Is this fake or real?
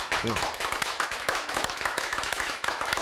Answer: fake